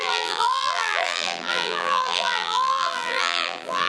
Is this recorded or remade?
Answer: remade